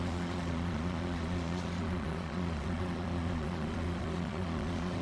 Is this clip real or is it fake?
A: fake